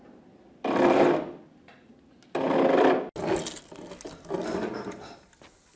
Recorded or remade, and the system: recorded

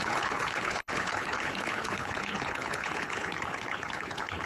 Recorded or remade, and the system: remade, codec, HILCodec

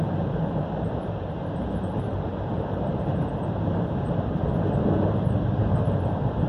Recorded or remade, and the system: remade, vocoder, BigVGAN v2